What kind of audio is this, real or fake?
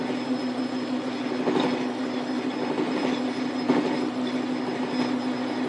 real